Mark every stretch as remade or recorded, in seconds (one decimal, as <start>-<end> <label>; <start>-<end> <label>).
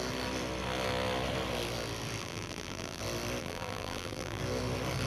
0.0-2.2 recorded; 2.2-3.0 remade; 3.0-3.4 recorded; 3.4-4.4 remade; 4.4-5.1 recorded